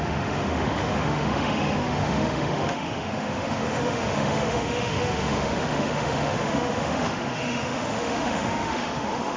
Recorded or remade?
remade